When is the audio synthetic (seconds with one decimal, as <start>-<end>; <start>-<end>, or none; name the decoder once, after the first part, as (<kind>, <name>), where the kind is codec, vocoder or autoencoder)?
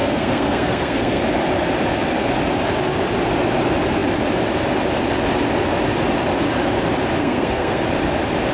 0.0-1.2 (codec, SNAC); 7.2-7.8